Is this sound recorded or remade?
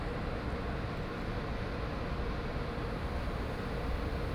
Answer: recorded